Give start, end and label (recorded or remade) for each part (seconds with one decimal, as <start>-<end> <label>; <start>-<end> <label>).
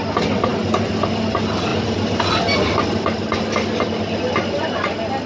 0.0-5.3 recorded